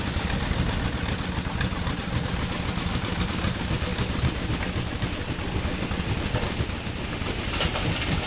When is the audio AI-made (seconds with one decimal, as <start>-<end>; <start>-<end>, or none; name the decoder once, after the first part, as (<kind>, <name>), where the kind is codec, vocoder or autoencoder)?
none